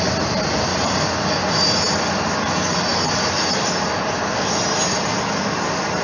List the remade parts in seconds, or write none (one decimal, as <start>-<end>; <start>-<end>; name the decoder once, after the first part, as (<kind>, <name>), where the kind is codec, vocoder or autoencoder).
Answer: none